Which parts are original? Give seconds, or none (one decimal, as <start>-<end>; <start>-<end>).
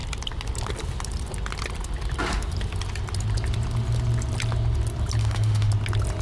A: 0.0-5.2; 5.7-6.2